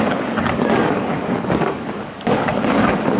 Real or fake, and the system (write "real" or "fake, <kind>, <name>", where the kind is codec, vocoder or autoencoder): fake, codec, DAC